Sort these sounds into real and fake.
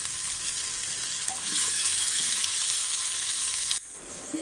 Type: fake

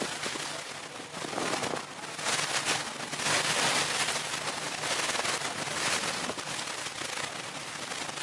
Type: real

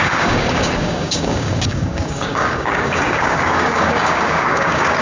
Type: fake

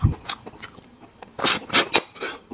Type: real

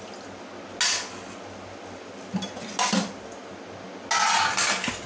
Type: real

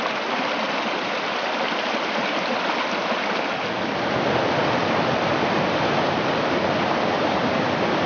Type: real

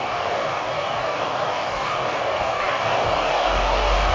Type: fake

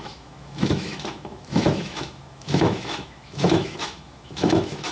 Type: fake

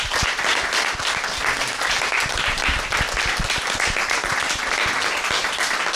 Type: real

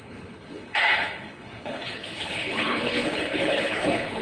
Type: fake